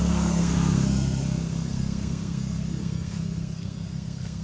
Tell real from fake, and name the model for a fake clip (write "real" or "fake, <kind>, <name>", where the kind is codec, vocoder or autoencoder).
fake, codec, SNAC